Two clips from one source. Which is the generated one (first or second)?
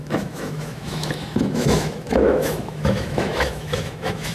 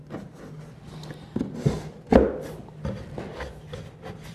first